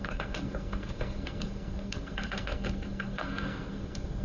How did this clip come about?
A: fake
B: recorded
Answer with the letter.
A